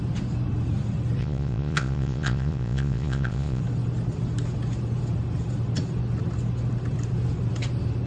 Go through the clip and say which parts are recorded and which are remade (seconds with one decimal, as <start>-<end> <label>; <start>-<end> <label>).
0.0-1.2 recorded; 1.2-3.6 remade; 3.6-8.1 recorded

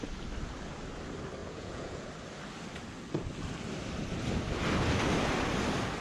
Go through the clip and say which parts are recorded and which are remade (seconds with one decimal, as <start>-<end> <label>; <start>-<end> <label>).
0.0-1.4 recorded; 1.4-2.1 remade; 2.1-6.0 recorded

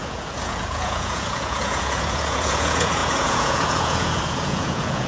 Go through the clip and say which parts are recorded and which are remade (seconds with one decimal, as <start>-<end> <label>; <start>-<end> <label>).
0.0-5.1 remade

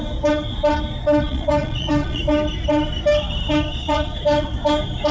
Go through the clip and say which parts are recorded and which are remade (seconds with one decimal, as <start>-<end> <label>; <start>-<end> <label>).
0.0-1.0 recorded; 1.0-2.2 remade; 2.2-3.7 recorded; 3.7-4.5 remade; 4.5-5.1 recorded

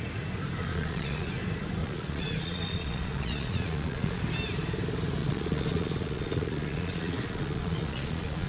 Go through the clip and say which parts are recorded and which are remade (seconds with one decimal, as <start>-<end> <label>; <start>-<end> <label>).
0.0-0.6 recorded; 0.6-1.3 remade; 1.3-1.8 recorded; 1.8-4.2 remade; 4.2-5.2 recorded; 5.2-8.5 remade